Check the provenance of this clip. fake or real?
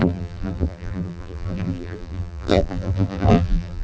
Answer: fake